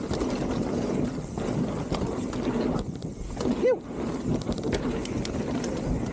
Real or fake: real